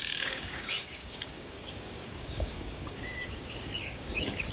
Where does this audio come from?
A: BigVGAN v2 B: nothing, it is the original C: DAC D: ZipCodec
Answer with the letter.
C